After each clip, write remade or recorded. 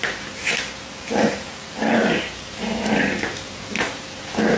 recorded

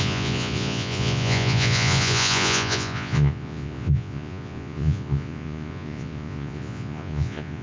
remade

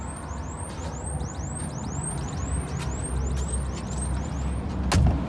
recorded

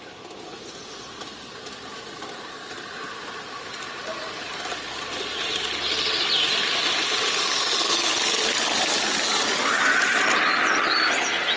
recorded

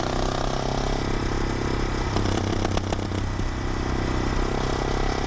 recorded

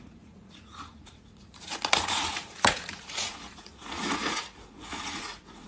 remade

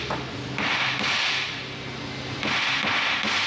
recorded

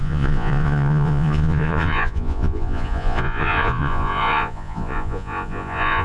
remade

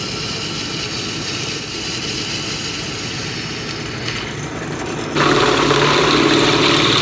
recorded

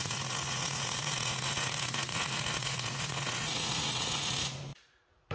remade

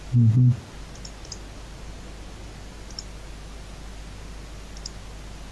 recorded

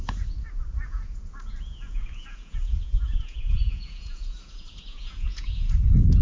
remade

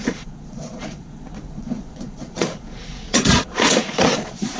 remade